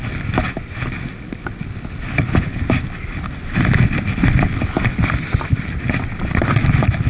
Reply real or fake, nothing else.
real